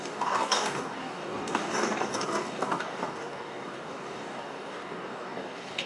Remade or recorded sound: remade